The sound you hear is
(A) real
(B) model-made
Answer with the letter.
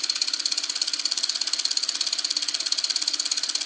A